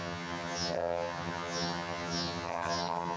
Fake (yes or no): yes